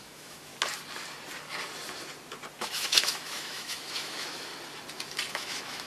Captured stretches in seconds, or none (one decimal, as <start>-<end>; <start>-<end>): 0.5-2.6; 4.5-5.3